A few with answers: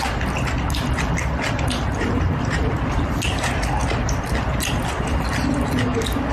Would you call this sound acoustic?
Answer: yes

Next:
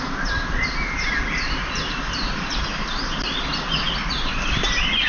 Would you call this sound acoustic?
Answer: yes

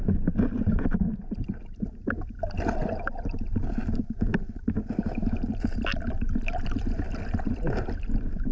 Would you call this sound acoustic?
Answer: yes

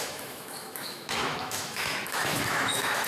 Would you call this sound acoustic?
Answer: no